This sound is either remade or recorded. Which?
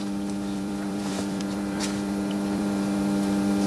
remade